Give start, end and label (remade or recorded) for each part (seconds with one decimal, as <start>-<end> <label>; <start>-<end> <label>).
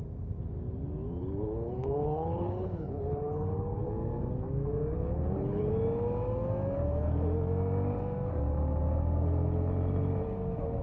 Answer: 0.0-1.2 recorded; 1.2-3.9 remade; 3.9-4.9 recorded; 4.9-5.7 remade; 5.7-10.8 recorded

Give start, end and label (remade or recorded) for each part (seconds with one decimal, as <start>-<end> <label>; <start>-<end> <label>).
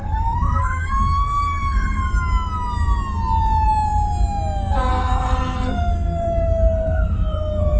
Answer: 0.0-2.1 remade; 2.1-4.9 recorded; 4.9-7.8 remade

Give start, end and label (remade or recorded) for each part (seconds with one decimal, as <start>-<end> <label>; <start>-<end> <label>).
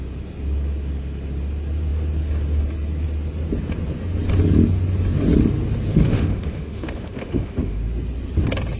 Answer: 0.0-5.9 recorded; 5.9-7.8 remade; 7.8-8.8 recorded